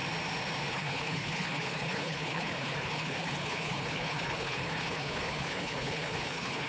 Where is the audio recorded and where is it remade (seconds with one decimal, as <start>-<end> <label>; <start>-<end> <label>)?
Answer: 0.0-0.7 recorded; 0.7-6.7 remade